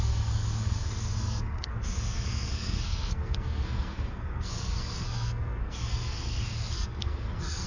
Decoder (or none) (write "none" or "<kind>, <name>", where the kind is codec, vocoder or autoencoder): codec, SNAC